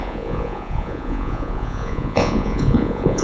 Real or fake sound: fake